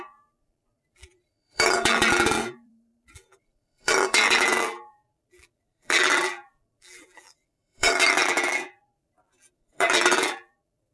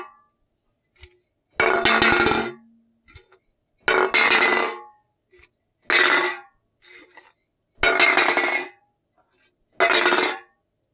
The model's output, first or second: first